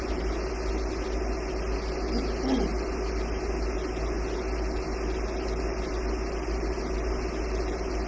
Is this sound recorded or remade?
recorded